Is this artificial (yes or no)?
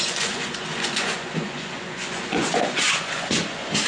yes